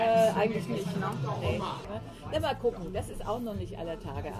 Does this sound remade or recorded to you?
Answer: recorded